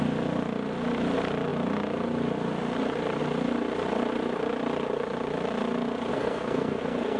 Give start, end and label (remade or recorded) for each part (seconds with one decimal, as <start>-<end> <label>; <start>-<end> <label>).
0.0-6.1 recorded; 6.1-7.2 remade